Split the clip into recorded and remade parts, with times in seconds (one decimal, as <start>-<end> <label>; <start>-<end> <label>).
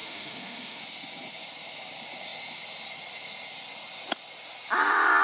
0.0-0.8 remade; 0.8-5.2 recorded